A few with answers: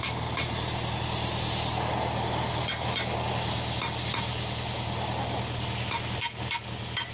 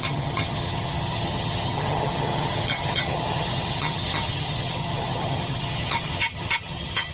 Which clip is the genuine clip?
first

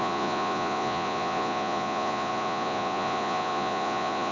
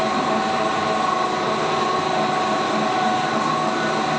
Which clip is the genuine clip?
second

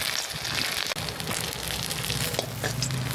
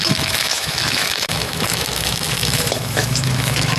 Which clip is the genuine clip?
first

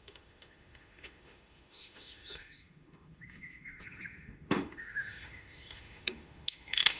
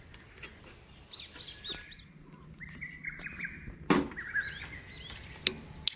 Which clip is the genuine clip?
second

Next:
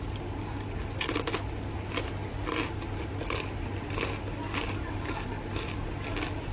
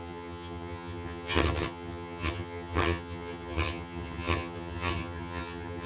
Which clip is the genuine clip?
first